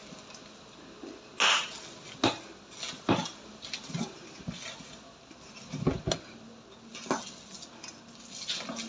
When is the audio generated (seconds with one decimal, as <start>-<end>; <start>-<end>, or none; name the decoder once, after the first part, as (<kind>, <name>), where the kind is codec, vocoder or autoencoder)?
none